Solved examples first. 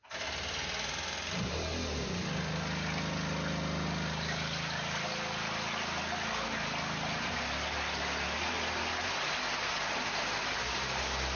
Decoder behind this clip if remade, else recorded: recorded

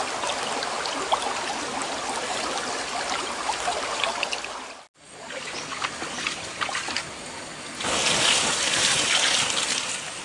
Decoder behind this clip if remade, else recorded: recorded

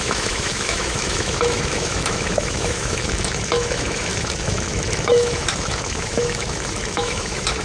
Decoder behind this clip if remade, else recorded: remade, autoencoder, DAC-VAE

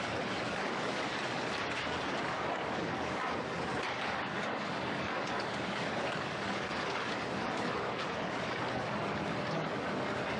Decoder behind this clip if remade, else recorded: remade, codec, DAC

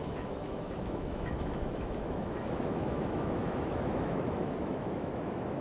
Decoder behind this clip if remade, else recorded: remade, autoencoder, DAC-VAE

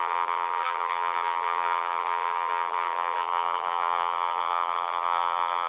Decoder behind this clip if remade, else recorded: remade, vocoder, BigVGAN v2